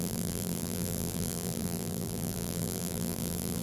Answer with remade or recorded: remade